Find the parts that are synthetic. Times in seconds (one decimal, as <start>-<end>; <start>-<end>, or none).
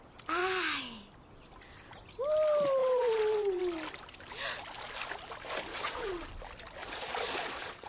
2.8-3.6; 5.7-6.3; 6.8-7.9